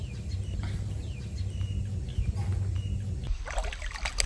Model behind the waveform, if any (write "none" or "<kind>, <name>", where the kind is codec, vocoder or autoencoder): none